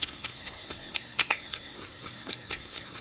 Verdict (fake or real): fake